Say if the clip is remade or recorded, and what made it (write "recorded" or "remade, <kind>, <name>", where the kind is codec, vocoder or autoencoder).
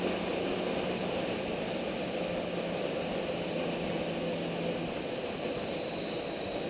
recorded